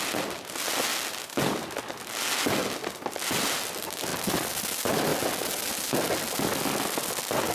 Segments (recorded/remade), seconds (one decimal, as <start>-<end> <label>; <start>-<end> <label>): 0.0-7.5 recorded